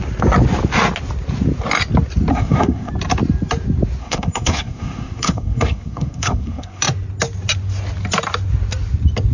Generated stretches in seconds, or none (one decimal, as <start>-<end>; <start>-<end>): 2.3-2.9; 4.0-6.8